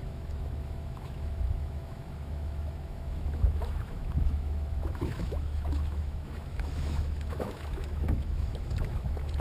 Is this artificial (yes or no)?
yes